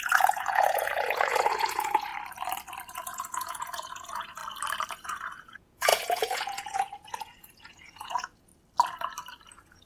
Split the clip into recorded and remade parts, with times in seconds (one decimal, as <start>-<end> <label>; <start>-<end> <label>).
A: 0.0-2.1 remade; 2.1-2.9 recorded; 2.9-4.4 remade; 4.4-4.9 recorded; 4.9-8.5 remade; 8.5-9.5 recorded; 9.5-9.9 remade